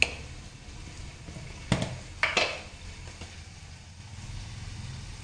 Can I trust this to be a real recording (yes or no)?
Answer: yes